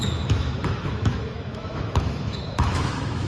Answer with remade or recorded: remade